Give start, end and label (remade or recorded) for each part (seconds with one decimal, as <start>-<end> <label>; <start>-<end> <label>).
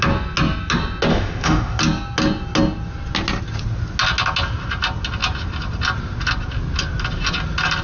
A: 0.0-1.1 recorded; 1.1-1.8 remade; 1.8-7.8 recorded